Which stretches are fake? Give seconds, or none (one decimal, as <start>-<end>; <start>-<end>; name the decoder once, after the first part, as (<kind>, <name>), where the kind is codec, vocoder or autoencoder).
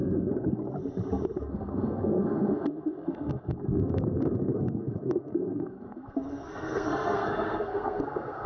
0.0-0.5 (codec, SNAC); 1.4-8.5